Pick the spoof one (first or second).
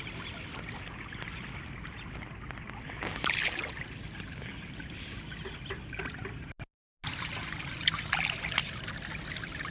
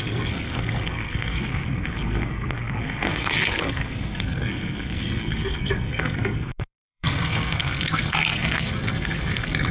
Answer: second